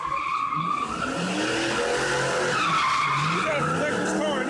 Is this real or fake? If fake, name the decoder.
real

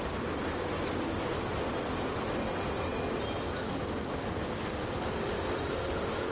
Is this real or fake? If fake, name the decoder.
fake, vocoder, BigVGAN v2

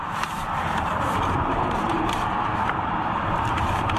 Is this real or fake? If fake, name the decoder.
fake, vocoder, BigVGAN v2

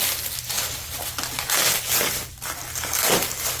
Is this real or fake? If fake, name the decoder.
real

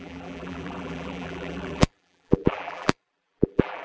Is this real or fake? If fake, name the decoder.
fake, vocoder, BigVGAN v2